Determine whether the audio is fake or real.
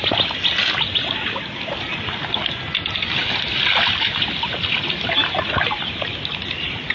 real